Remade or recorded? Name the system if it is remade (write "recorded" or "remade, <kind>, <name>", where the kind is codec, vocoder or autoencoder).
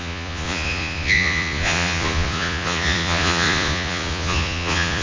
remade, vocoder, Vocos